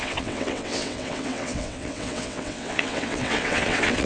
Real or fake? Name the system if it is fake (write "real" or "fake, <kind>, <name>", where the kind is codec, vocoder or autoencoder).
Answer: fake, vocoder, WaveNeXt